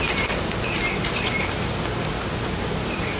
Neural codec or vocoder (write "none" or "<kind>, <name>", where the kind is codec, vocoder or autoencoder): none